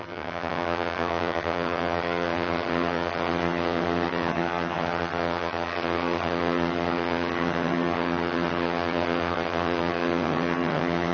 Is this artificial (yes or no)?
yes